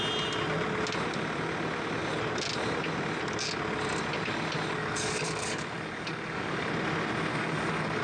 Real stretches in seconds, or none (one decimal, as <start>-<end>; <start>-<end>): 0.0-4.8; 6.7-7.3